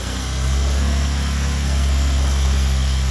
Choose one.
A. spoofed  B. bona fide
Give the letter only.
A